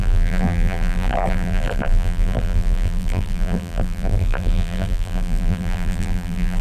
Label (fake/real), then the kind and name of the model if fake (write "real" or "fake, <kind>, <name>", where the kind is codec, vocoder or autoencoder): fake, vocoder, BigVGAN v2